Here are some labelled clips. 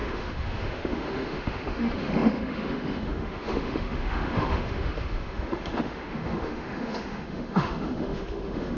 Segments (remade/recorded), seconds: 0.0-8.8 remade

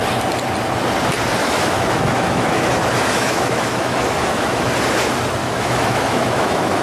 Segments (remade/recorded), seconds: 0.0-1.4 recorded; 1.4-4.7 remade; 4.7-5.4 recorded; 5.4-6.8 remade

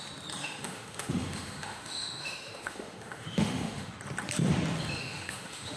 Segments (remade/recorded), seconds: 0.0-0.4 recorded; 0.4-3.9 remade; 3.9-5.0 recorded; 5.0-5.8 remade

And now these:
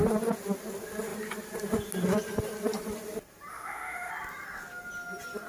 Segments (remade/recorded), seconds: 0.0-3.5 recorded; 3.5-4.1 remade; 4.1-5.5 recorded

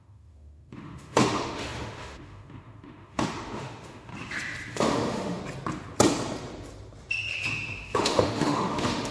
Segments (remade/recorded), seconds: 0.0-4.1 remade; 4.1-4.7 recorded; 4.7-5.4 remade; 5.4-7.5 recorded; 7.5-9.1 remade